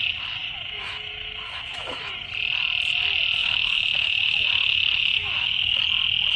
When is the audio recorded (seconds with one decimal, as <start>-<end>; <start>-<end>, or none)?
0.0-0.4; 2.1-3.4; 5.8-6.4